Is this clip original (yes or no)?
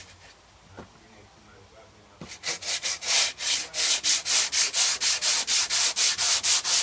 yes